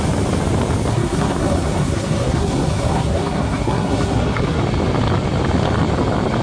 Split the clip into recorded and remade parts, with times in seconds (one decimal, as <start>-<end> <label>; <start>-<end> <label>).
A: 0.0-0.9 recorded; 0.9-4.6 remade; 4.6-6.4 recorded